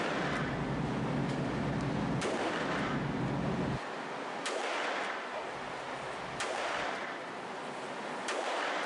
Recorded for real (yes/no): yes